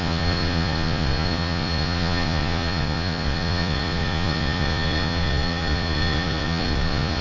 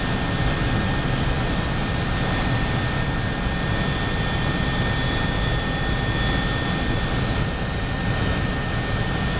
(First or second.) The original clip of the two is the second